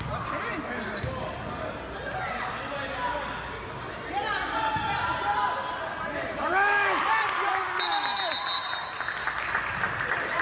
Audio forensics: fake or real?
real